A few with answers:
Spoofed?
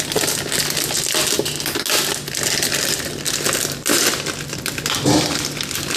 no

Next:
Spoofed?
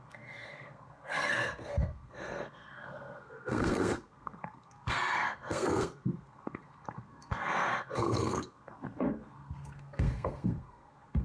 yes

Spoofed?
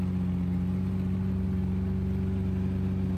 no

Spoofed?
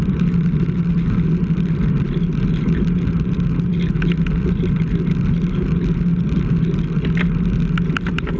no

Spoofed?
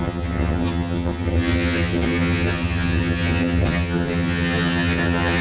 yes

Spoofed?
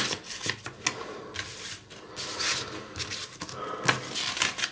no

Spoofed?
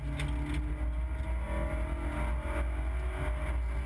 no